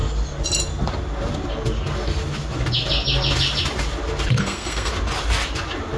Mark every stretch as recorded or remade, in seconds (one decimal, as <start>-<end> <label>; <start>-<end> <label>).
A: 0.0-4.4 recorded; 4.4-4.9 remade; 4.9-6.0 recorded